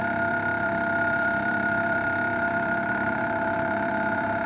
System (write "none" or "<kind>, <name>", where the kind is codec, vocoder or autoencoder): vocoder, BigVGAN v2